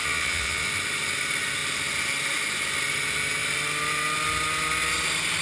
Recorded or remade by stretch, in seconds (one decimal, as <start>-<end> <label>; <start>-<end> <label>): 0.0-0.7 remade; 0.7-5.4 recorded